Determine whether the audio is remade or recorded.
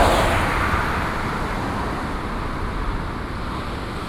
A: recorded